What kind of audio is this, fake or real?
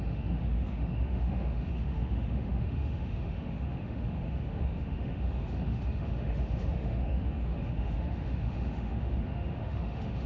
fake